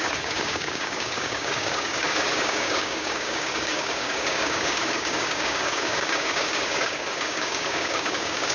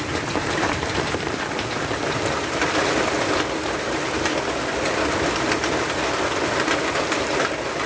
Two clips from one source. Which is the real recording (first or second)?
second